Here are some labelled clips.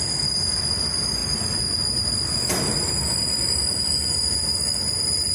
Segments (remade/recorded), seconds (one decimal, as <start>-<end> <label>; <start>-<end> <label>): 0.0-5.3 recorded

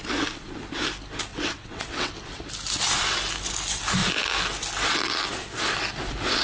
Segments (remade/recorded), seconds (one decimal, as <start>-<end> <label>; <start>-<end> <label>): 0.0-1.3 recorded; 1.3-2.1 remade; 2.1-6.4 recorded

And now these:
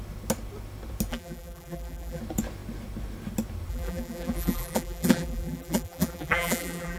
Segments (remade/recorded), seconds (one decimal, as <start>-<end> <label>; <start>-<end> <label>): 0.0-1.1 recorded; 1.1-2.2 remade; 2.2-3.7 recorded; 3.7-7.0 remade